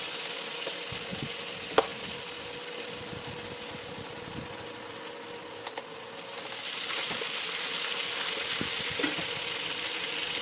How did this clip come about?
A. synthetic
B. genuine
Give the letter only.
B